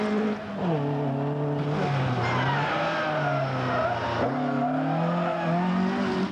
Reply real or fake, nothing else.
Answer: real